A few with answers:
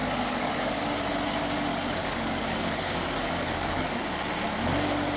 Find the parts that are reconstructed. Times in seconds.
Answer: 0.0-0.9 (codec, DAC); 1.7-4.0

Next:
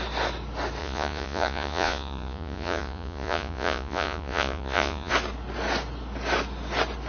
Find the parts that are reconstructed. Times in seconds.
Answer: 0.8-5.1 (vocoder, Vocos)

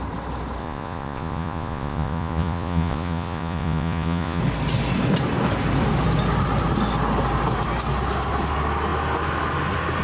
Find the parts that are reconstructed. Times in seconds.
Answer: 0.6-4.4 (vocoder, Vocos)